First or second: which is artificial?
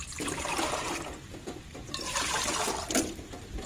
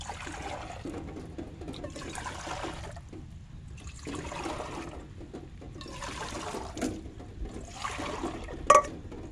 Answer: first